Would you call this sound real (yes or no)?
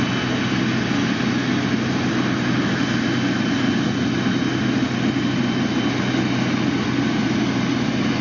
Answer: yes